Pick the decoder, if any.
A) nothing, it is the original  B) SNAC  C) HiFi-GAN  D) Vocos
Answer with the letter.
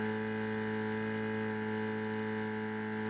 A